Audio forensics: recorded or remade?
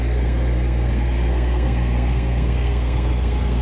remade